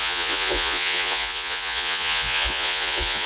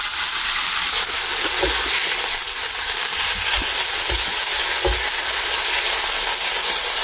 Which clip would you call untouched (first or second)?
second